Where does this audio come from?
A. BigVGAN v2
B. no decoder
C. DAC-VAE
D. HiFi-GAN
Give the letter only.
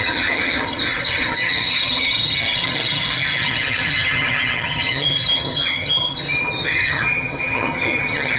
D